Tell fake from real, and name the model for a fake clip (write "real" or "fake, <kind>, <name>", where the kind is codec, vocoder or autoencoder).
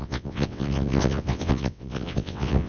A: fake, vocoder, WaveNeXt